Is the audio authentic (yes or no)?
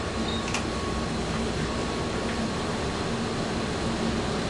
yes